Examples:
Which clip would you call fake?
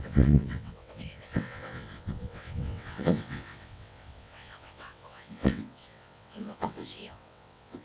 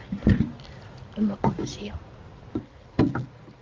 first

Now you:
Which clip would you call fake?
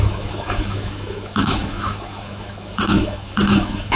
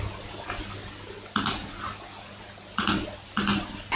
first